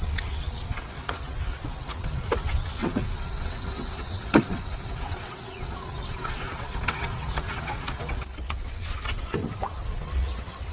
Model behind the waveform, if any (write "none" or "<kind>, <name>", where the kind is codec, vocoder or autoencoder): vocoder, WaveNeXt